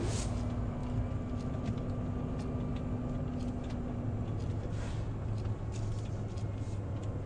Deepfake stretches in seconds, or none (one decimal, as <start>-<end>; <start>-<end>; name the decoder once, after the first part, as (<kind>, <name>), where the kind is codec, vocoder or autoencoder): none